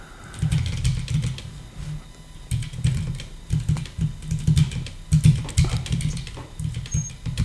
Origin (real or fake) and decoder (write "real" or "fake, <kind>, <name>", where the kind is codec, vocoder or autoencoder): real